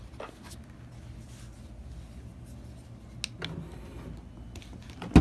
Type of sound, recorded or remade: recorded